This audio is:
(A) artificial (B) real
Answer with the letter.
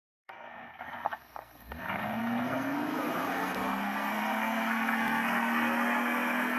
A